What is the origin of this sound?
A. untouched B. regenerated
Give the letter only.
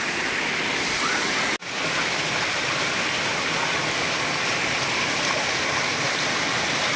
A